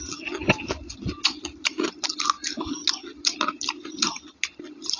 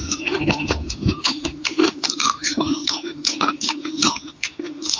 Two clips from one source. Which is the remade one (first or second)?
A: second